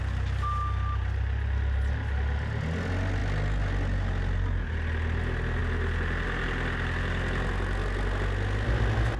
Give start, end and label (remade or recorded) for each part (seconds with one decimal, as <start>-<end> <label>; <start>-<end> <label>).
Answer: 0.0-9.2 recorded